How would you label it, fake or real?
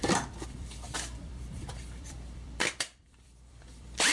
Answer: fake